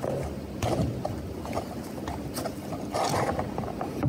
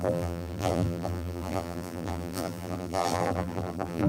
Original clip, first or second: first